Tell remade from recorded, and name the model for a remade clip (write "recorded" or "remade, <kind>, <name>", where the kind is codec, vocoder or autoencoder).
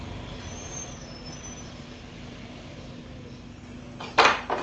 recorded